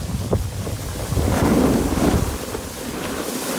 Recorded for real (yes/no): yes